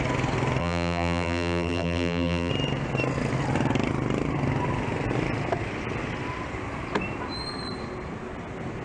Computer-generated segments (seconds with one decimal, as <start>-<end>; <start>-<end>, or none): 0.6-2.5